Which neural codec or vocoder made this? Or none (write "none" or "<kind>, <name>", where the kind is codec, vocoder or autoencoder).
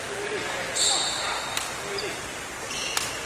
vocoder, BigVGAN v2